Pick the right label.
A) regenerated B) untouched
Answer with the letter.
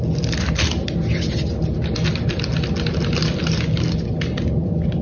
B